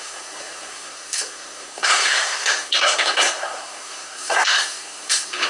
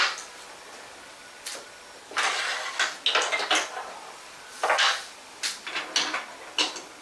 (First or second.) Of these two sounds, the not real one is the first